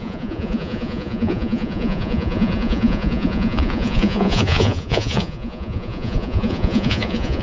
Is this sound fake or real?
fake